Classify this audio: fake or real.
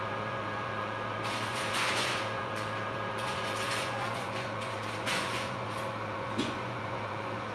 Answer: fake